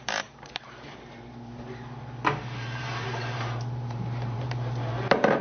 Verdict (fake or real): fake